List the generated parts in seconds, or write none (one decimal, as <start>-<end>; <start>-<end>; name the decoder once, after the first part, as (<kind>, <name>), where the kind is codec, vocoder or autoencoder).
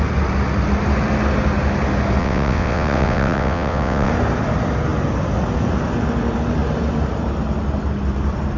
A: 2.2-4.1 (vocoder, WaveNeXt)